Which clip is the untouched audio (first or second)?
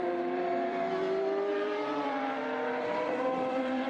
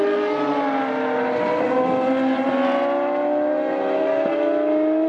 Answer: second